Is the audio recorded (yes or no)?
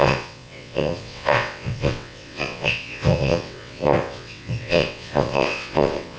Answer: no